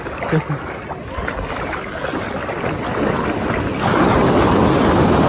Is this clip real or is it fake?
real